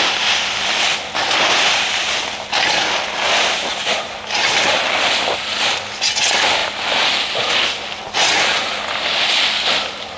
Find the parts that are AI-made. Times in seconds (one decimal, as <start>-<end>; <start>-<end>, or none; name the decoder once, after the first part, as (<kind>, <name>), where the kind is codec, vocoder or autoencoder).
none